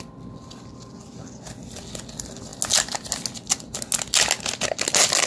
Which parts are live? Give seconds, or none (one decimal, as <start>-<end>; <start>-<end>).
0.0-5.3